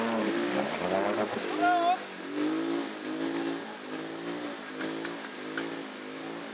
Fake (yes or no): no